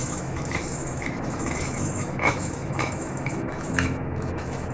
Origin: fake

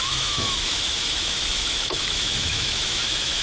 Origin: fake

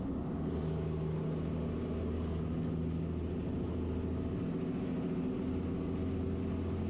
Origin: real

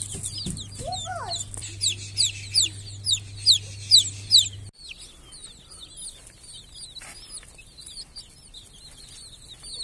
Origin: real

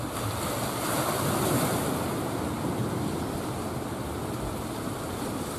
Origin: real